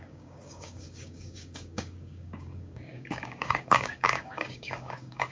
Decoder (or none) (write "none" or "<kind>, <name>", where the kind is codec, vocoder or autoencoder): codec, DAC